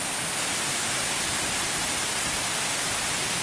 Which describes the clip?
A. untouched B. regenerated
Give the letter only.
A